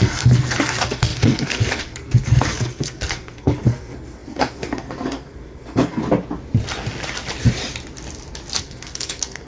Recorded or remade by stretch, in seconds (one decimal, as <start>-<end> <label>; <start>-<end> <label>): 0.0-6.0 remade; 6.0-8.6 recorded; 8.6-9.5 remade